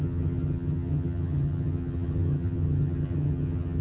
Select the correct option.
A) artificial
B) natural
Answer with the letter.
A